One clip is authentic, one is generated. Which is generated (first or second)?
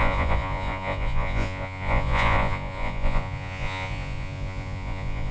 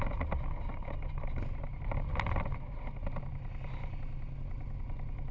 first